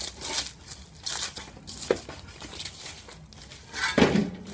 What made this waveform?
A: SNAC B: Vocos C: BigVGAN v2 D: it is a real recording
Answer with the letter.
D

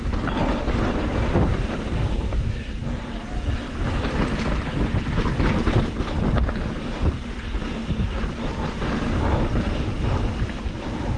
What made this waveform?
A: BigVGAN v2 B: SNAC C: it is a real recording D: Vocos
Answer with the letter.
C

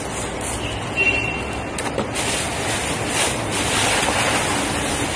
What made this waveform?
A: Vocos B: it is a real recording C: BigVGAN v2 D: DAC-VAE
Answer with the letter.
B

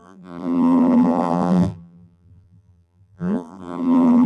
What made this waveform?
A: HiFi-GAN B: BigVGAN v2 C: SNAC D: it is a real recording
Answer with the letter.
B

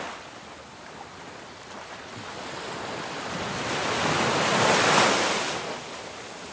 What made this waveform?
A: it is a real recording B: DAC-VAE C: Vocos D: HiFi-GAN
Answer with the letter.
A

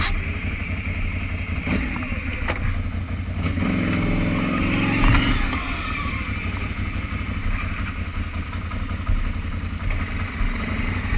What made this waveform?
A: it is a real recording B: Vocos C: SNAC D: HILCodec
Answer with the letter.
A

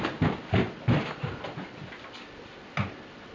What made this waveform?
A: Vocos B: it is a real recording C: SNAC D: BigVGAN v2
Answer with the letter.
B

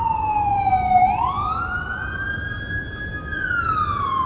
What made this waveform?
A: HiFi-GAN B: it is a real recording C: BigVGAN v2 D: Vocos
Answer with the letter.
B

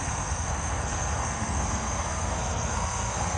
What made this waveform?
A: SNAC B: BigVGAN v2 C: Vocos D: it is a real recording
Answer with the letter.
A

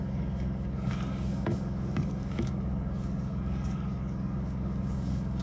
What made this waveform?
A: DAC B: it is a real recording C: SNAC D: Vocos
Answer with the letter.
A